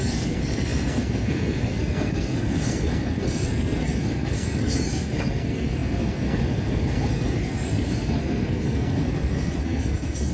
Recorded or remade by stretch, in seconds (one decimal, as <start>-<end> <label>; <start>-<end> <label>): 0.0-10.3 remade